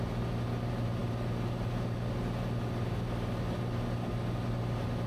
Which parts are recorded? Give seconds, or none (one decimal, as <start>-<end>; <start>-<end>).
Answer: 0.0-5.1